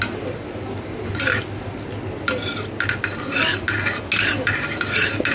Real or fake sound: real